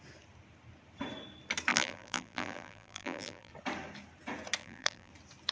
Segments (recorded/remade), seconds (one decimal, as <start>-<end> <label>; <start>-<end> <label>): 0.0-1.7 recorded; 1.7-3.5 remade; 3.5-4.6 recorded; 4.6-5.1 remade; 5.1-5.5 recorded